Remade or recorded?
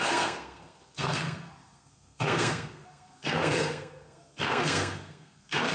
remade